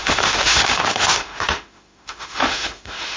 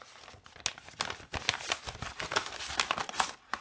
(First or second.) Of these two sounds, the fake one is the first